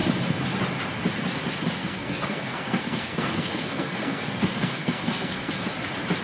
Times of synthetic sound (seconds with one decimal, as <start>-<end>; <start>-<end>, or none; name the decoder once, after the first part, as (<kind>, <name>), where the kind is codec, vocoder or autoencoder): 1.8-5.5 (codec, SNAC)